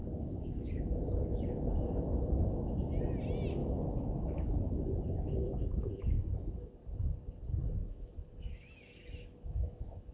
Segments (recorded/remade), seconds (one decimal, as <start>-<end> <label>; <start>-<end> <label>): 0.0-2.6 remade; 2.6-3.6 recorded; 3.6-6.7 remade; 6.7-7.8 recorded; 7.8-10.1 remade